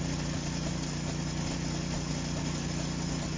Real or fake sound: real